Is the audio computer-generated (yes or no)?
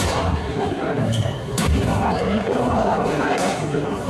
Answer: yes